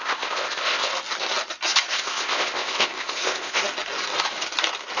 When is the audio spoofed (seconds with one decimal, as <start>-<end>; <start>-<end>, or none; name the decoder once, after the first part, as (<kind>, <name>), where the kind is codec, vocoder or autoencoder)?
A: 0.0-0.9 (codec, ZipCodec); 1.9-3.6